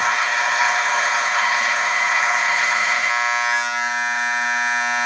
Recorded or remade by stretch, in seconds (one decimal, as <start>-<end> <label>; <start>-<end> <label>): 0.0-3.1 remade; 3.1-5.1 recorded